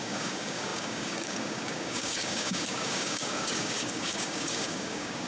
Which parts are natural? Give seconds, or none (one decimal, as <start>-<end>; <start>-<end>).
none